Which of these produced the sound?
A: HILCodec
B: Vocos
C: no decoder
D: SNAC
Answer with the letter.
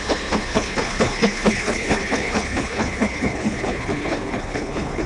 A